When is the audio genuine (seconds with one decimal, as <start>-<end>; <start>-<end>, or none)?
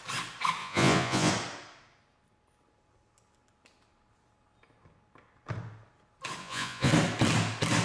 0.0-0.6; 1.3-6.4; 6.9-7.8